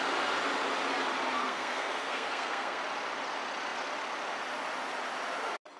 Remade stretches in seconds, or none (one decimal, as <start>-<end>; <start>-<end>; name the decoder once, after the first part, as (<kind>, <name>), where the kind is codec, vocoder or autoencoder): 1.4-2.8 (codec, SNAC)